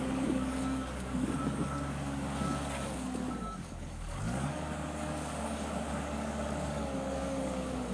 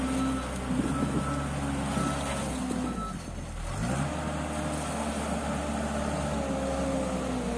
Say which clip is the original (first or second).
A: second